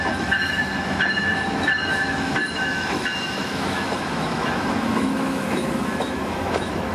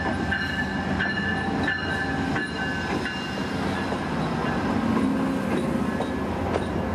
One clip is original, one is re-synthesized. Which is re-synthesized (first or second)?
first